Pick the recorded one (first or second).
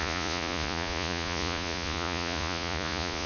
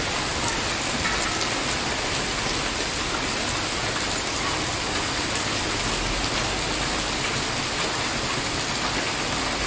second